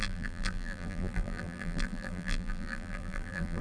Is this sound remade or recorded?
remade